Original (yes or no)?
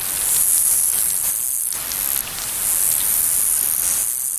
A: yes